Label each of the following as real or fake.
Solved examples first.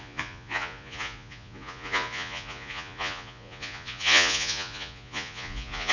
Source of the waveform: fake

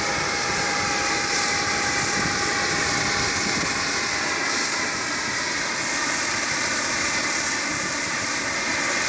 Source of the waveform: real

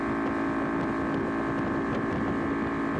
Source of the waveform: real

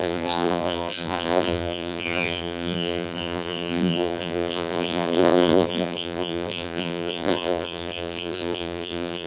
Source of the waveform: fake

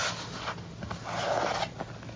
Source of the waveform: real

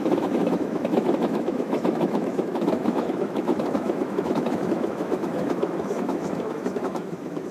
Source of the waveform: fake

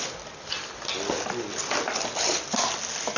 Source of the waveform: real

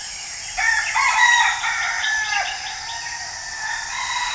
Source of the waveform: real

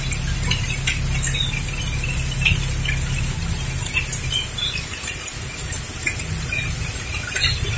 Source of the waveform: real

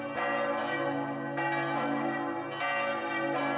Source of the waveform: real